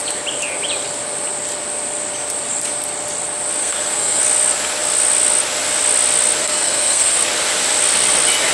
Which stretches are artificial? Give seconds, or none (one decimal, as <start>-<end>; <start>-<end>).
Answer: 3.6-4.2; 6.4-7.2